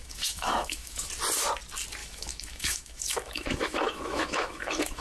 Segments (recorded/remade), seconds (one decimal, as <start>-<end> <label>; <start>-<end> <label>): 0.0-1.1 remade; 1.1-2.0 recorded; 2.0-5.0 remade